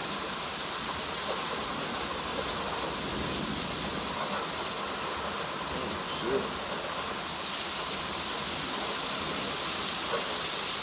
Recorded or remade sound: recorded